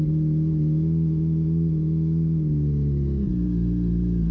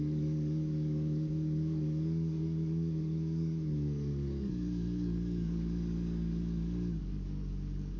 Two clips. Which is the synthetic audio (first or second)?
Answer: second